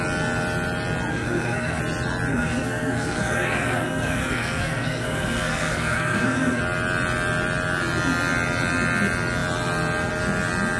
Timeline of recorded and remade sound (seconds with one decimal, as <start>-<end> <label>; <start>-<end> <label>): 0.0-1.1 recorded; 1.1-1.8 remade; 1.8-2.3 recorded; 2.3-6.6 remade; 6.6-10.8 recorded